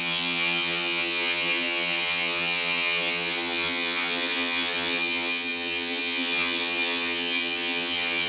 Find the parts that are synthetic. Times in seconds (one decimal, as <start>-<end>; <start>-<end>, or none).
0.0-8.3